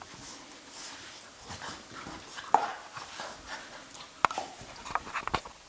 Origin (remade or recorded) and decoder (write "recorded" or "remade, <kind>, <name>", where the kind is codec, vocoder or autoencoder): recorded